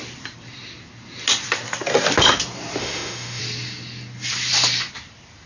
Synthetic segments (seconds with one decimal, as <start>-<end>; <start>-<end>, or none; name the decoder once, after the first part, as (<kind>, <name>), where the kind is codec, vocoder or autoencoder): 2.8-3.4 (autoencoder, DAC-VAE)